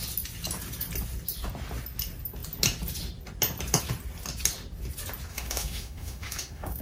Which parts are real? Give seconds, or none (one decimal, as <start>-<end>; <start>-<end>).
0.0-5.3